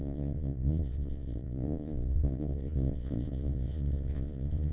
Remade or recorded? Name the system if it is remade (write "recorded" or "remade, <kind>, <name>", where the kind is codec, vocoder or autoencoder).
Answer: remade, vocoder, Vocos